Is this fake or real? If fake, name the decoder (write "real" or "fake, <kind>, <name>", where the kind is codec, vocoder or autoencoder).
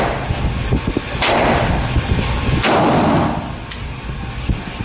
real